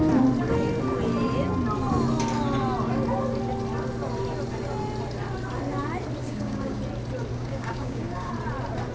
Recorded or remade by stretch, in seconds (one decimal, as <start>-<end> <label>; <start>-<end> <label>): 0.0-6.2 recorded; 6.2-6.8 remade; 6.8-7.3 recorded; 7.3-8.3 remade; 8.3-8.9 recorded